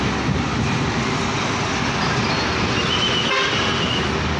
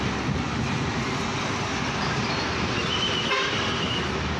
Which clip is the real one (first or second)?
first